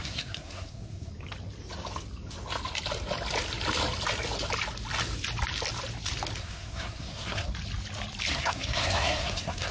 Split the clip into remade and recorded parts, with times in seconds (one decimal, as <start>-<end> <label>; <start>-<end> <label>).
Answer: 0.0-1.1 remade; 1.1-6.4 recorded; 6.4-7.5 remade; 7.5-8.3 recorded; 8.3-9.7 remade